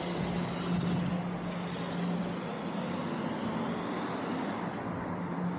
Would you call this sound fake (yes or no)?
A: no